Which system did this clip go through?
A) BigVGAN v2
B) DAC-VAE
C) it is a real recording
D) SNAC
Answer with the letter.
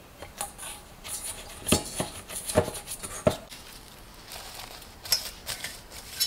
C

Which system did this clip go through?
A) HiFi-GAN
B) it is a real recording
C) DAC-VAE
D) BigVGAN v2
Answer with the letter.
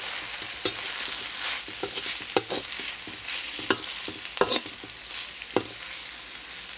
B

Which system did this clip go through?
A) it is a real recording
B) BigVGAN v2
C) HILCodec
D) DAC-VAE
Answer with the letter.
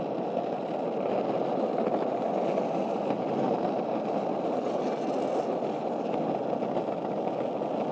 A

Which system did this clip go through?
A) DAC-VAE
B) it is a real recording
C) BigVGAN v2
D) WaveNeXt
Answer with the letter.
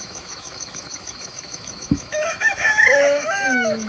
A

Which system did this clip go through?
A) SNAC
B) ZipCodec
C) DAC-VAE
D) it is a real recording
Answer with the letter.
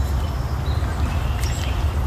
D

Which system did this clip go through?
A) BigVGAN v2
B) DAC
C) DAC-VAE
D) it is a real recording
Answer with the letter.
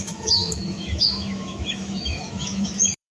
C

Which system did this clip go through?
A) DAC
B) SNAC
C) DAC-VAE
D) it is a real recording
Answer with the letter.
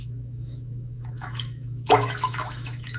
C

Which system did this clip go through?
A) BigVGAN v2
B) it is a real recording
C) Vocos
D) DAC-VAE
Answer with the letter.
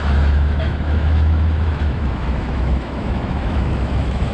D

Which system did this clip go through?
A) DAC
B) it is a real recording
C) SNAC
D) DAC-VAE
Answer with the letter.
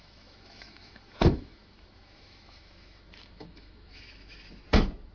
D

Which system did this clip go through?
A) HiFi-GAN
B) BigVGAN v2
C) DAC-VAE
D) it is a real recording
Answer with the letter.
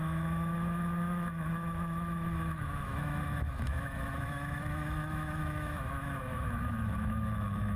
C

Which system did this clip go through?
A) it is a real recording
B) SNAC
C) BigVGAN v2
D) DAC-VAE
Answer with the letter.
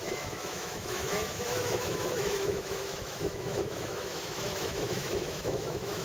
D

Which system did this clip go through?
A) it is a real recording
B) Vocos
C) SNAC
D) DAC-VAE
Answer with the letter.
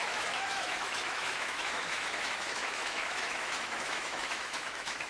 D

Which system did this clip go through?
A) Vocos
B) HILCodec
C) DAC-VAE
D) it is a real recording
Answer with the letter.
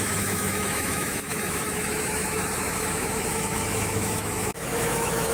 C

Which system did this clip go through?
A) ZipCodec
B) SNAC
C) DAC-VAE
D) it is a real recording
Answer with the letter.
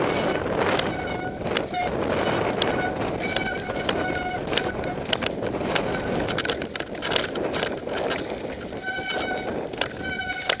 D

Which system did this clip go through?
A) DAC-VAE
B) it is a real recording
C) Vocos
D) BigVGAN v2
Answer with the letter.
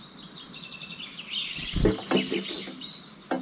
B